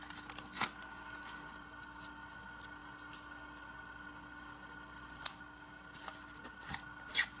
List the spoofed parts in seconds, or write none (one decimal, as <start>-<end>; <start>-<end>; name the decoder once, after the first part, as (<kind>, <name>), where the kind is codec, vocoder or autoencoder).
none